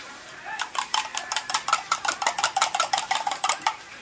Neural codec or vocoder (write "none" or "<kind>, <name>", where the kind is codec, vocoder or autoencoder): vocoder, BigVGAN v2